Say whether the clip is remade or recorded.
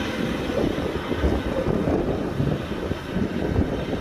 recorded